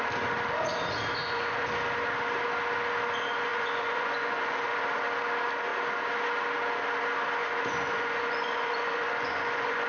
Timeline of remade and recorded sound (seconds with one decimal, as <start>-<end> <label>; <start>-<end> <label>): 0.0-1.2 recorded; 1.2-1.7 remade; 1.7-3.5 recorded; 3.5-4.8 remade; 4.8-7.4 recorded; 7.4-9.9 remade